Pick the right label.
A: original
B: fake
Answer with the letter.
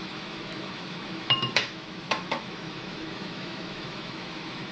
B